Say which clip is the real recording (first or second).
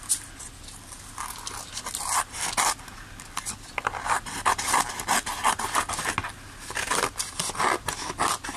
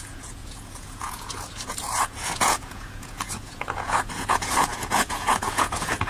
first